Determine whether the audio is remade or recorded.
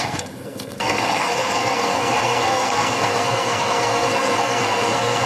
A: remade